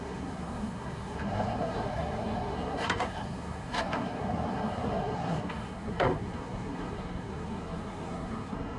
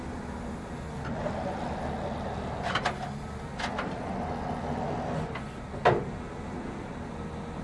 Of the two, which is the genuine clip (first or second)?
second